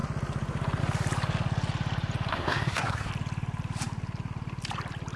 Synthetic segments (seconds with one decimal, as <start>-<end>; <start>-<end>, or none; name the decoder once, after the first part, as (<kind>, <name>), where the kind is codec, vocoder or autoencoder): 2.3-3.1 (codec, SNAC)